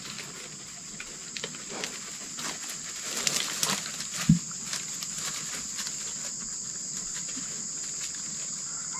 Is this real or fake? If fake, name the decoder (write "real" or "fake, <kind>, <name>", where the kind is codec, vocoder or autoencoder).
real